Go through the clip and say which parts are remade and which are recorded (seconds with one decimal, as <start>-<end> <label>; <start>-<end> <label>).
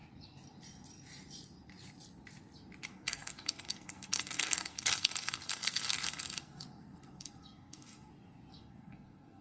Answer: 0.0-2.9 recorded; 2.9-8.1 remade; 8.1-8.5 recorded; 8.5-9.4 remade